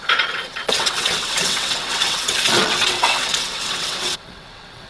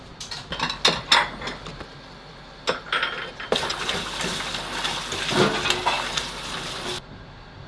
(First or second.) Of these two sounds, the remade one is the first